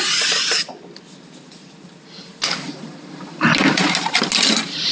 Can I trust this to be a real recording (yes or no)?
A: yes